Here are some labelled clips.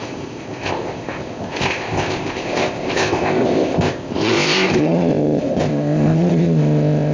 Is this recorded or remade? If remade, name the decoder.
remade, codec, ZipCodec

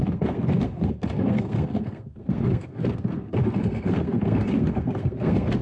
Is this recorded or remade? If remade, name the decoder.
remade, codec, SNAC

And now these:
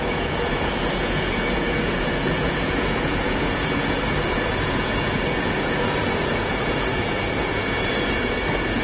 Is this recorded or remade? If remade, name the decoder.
remade, vocoder, Vocos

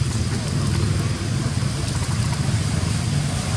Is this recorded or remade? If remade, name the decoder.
recorded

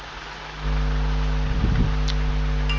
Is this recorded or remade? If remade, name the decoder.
recorded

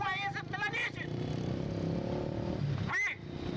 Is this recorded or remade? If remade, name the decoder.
recorded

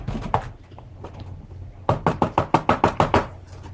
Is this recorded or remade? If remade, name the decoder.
recorded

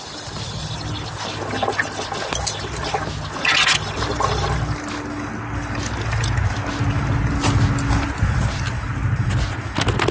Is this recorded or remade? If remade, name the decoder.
recorded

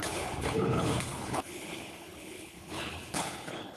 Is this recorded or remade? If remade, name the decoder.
remade, codec, HILCodec